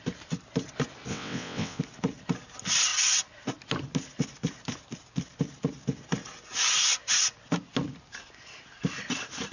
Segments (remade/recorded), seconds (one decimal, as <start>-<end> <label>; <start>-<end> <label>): 0.0-1.1 recorded; 1.1-1.8 remade; 1.8-9.5 recorded